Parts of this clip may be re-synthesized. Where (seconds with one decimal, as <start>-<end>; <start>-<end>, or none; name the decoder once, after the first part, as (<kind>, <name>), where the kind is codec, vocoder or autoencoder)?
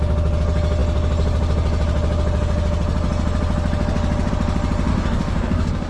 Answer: 4.9-5.9 (codec, DAC)